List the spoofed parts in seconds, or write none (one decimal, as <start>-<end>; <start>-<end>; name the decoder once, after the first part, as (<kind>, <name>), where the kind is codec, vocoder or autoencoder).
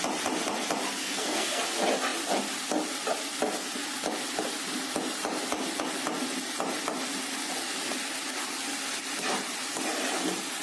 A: 1.0-1.6 (codec, SNAC)